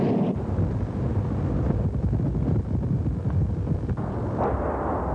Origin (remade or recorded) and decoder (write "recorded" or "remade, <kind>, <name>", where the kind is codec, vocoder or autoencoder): recorded